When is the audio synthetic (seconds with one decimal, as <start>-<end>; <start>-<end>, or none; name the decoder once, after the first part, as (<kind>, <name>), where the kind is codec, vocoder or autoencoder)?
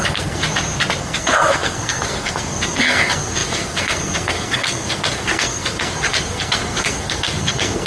0.0-0.4 (codec, SNAC); 1.0-7.9